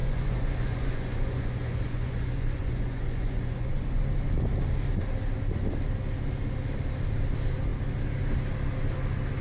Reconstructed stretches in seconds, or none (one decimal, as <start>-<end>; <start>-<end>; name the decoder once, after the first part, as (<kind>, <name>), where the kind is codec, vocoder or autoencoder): 0.0-4.0 (vocoder, Vocos)